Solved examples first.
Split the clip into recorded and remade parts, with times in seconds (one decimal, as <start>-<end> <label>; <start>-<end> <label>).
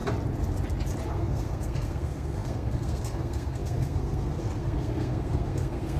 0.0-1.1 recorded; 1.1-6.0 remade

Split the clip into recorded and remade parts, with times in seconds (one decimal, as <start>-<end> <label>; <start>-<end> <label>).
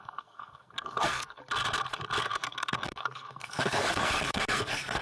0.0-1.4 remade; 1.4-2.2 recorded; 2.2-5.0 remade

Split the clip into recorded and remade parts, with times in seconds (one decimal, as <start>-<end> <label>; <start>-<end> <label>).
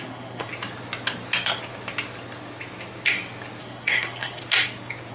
0.0-0.5 remade; 0.5-3.6 recorded; 3.6-4.4 remade; 4.4-5.1 recorded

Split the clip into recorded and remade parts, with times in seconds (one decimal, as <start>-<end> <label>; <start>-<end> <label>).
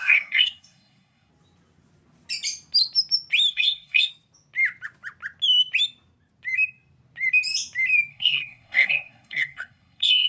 0.0-1.3 remade; 1.3-3.5 recorded; 3.5-4.1 remade; 4.1-8.1 recorded; 8.1-10.3 remade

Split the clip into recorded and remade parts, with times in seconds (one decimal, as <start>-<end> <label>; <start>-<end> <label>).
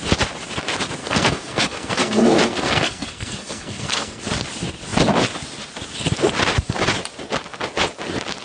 0.0-1.0 recorded; 1.0-4.2 remade; 4.2-8.4 recorded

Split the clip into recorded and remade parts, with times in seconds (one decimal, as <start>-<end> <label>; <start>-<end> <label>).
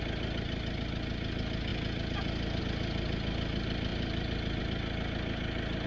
0.0-5.9 recorded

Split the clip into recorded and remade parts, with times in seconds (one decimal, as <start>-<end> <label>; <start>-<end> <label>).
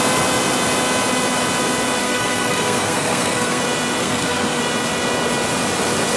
0.0-2.0 recorded; 2.0-3.6 remade; 3.6-4.0 recorded; 4.0-4.6 remade; 4.6-6.2 recorded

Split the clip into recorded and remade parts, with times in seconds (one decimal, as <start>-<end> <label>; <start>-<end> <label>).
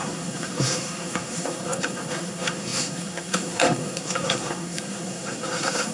0.0-5.9 remade